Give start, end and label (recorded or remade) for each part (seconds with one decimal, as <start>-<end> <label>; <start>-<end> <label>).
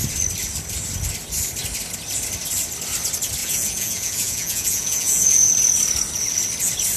0.0-3.4 recorded; 3.4-5.5 remade; 5.5-7.0 recorded